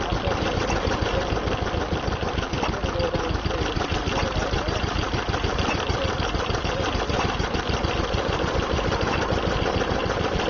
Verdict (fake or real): real